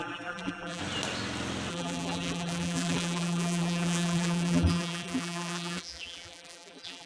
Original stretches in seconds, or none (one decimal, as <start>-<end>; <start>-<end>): 0.8-1.7